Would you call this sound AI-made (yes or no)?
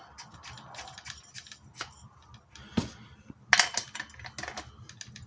no